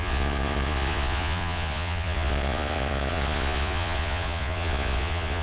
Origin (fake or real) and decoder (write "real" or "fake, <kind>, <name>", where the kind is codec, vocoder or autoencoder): fake, vocoder, Vocos